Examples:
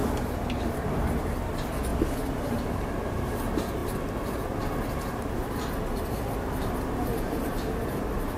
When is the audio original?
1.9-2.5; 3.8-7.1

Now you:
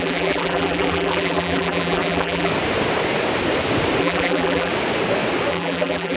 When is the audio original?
2.5-4.0; 4.7-5.5

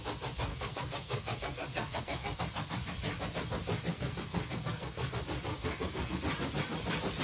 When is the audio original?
0.0-0.5; 2.4-3.9; 5.1-5.5; 6.2-7.2

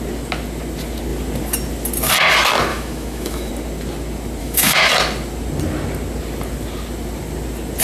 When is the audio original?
0.0-2.7; 3.5-4.4; 4.9-7.8

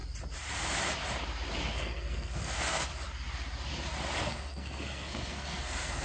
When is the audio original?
0.0-1.7; 2.9-4.2